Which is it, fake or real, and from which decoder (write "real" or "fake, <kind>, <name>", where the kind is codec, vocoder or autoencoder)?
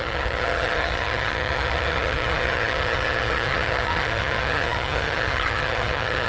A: fake, vocoder, HiFi-GAN